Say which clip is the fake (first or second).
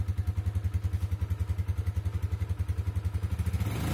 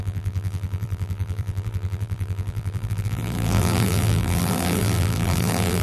second